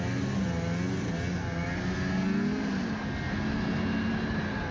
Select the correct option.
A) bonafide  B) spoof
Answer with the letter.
A